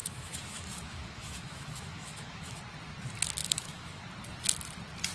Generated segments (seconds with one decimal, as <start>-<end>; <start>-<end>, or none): 0.0-2.6; 3.4-4.0